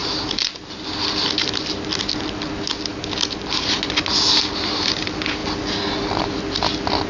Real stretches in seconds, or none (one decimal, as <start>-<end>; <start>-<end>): 0.0-7.1